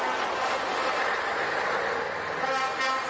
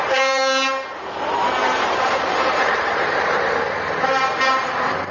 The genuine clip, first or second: first